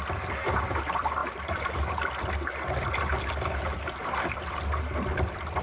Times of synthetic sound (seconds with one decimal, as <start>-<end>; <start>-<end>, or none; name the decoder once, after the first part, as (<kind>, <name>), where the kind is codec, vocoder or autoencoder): none